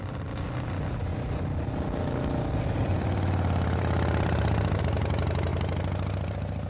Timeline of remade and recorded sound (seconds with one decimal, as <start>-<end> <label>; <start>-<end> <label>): 0.0-1.1 recorded; 1.1-4.8 remade; 4.8-5.5 recorded; 5.5-6.7 remade